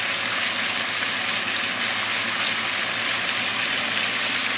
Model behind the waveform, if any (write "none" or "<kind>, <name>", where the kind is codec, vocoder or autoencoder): none